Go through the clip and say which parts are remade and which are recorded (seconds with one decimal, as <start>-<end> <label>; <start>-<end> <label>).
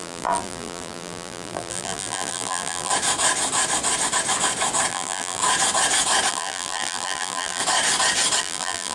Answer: 0.0-2.9 remade; 2.9-4.9 recorded; 4.9-5.4 remade; 5.4-6.3 recorded; 6.3-7.6 remade; 7.6-8.4 recorded; 8.4-8.9 remade